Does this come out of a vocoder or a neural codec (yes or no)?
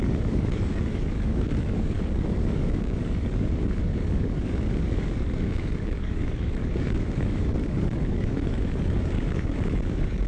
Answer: yes